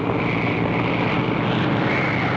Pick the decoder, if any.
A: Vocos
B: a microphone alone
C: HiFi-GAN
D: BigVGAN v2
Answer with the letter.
B